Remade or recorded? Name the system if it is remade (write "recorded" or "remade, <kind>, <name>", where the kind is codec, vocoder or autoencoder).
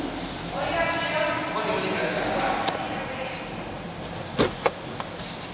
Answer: recorded